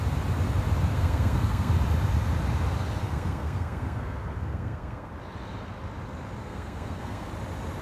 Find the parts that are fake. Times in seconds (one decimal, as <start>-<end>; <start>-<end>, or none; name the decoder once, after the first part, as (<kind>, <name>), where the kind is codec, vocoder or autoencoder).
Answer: 0.9-1.7 (codec, SNAC); 3.0-5.1; 6.4-7.3